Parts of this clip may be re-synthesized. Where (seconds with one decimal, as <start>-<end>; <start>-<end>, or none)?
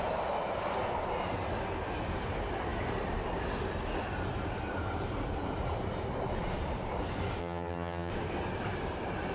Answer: 7.4-8.1